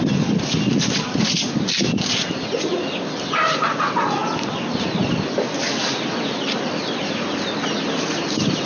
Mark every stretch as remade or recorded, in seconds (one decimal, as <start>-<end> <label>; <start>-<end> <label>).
0.0-8.7 recorded